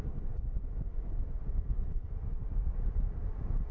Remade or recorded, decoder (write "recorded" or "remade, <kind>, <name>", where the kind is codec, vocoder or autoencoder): recorded